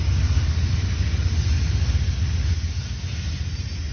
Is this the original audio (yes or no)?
yes